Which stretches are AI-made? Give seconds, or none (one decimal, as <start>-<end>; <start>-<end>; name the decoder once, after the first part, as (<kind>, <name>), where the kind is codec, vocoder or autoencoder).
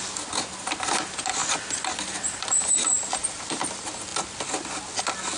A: none